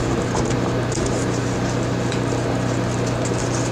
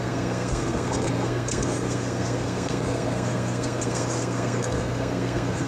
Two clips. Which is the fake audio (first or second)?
second